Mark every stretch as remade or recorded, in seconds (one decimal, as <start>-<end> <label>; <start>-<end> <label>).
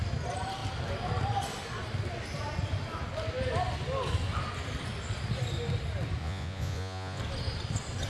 0.0-6.2 recorded; 6.2-7.2 remade; 7.2-8.1 recorded